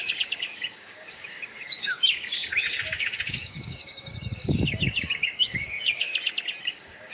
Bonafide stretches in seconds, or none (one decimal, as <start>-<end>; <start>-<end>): 6.1-6.6